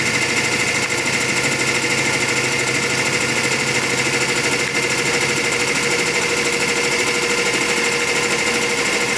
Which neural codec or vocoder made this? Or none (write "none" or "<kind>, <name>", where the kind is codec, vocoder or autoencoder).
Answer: none